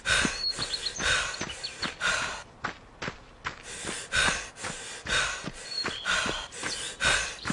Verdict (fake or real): real